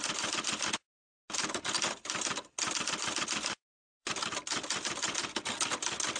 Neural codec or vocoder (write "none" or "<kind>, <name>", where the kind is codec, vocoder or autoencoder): none